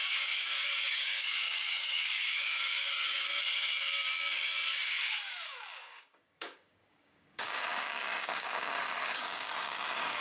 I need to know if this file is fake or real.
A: fake